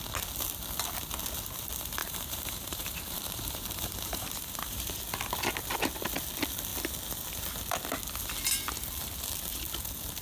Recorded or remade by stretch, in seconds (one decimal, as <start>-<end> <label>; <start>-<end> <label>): 0.0-2.0 recorded; 2.0-5.0 remade; 5.0-10.2 recorded